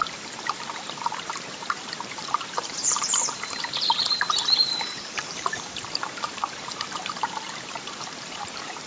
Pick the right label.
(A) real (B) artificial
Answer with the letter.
B